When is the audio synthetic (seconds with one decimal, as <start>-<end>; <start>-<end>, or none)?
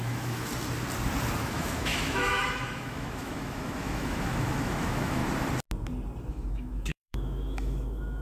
0.0-0.5; 1.4-5.2; 6.3-8.2